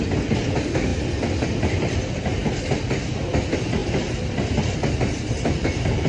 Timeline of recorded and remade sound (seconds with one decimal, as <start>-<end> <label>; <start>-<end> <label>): 0.0-6.1 recorded